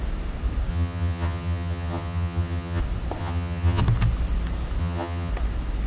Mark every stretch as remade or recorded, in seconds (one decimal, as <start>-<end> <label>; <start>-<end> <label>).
0.0-0.7 recorded; 0.7-2.8 remade; 2.8-3.2 recorded; 3.2-3.8 remade; 3.8-4.8 recorded; 4.8-5.3 remade; 5.3-5.9 recorded